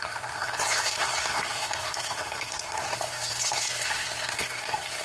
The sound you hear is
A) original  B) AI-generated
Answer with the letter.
B